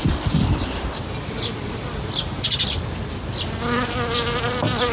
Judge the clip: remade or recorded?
recorded